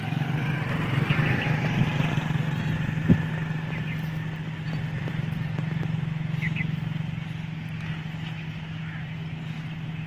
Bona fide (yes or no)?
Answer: yes